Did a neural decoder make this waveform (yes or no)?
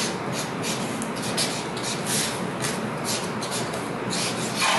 no